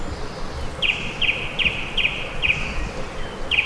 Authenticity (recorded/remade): recorded